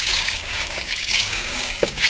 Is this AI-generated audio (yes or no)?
yes